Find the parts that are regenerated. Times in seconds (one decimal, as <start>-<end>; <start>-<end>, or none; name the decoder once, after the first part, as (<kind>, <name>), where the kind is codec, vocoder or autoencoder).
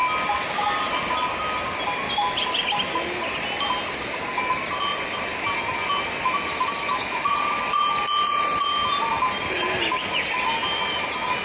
none